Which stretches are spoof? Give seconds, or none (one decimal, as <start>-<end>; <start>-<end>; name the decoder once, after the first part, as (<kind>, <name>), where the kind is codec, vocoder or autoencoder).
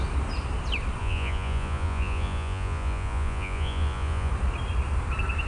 1.0-4.3 (vocoder, Vocos)